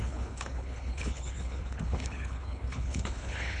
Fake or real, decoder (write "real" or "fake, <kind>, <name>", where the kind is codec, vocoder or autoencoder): fake, codec, HILCodec